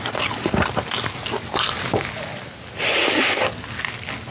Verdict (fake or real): real